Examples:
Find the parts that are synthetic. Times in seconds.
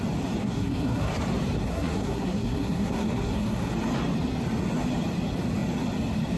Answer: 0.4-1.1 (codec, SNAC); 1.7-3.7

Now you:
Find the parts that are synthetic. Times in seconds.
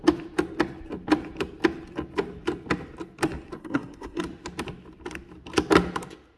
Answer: 3.6-4.2 (codec, SNAC)